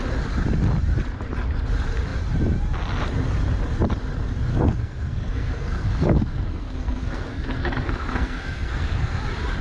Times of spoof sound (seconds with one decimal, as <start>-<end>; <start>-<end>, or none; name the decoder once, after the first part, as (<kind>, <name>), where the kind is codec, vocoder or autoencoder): 4.5-9.2 (codec, SNAC)